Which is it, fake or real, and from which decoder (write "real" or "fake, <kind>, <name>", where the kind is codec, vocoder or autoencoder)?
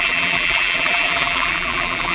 fake, vocoder, BigVGAN v2